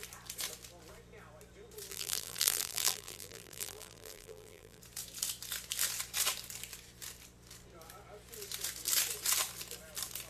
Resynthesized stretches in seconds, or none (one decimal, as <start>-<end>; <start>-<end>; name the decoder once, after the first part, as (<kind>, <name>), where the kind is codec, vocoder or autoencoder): 1.9-4.8 (vocoder, BigVGAN v2)